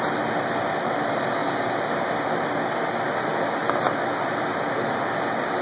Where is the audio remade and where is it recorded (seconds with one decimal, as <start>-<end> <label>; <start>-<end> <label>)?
0.0-5.6 recorded